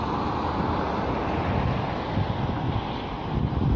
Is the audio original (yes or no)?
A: yes